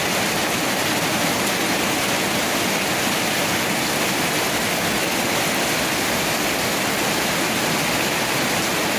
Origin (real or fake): real